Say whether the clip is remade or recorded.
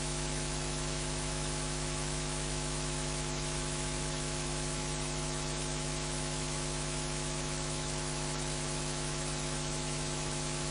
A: remade